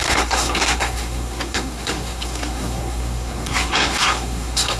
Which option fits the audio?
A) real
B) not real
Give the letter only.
B